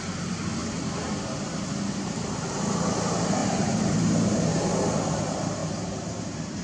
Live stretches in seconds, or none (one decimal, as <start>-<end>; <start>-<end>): 0.0-3.4; 4.7-5.6